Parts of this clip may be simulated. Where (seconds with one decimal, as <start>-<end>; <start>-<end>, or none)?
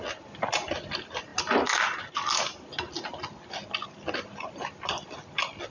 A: none